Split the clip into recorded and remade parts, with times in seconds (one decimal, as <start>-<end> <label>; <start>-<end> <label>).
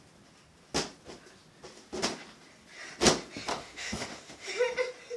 0.0-3.5 recorded; 3.5-4.5 remade; 4.5-5.2 recorded